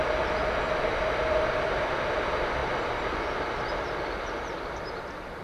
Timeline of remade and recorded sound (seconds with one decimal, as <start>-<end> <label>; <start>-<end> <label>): 0.0-5.4 recorded